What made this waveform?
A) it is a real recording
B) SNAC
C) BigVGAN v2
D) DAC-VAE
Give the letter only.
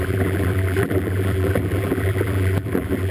C